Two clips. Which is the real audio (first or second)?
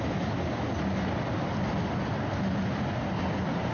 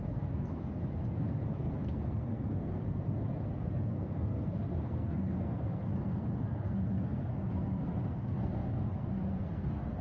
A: first